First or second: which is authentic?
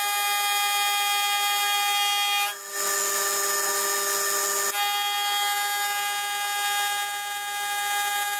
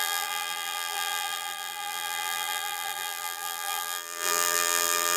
first